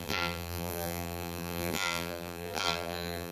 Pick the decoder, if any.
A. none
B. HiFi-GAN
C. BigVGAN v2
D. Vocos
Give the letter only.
C